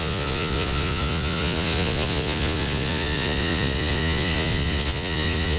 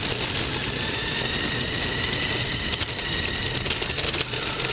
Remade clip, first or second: first